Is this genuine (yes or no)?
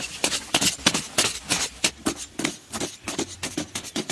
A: no